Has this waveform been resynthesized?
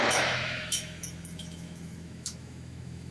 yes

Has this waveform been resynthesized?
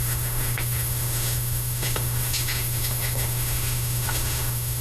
yes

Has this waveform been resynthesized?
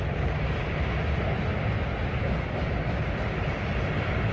no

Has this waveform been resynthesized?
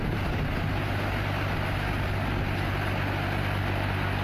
no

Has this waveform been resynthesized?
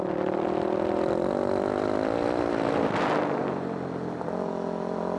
no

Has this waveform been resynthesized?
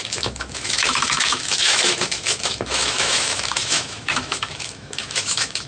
yes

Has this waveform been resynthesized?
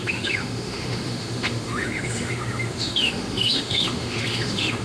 yes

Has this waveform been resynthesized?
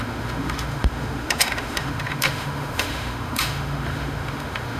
yes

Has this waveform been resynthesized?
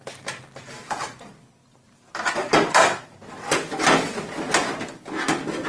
no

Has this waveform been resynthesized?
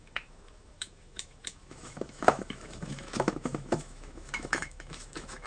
yes